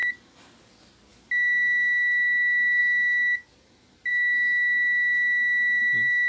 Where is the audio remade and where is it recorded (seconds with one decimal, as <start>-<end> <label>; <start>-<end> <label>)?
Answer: 0.0-6.3 recorded